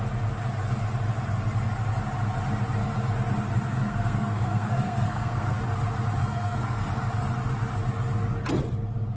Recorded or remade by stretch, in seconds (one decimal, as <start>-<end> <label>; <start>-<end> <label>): 0.0-3.7 recorded; 3.7-5.6 remade; 5.6-6.2 recorded; 6.2-6.9 remade; 6.9-9.2 recorded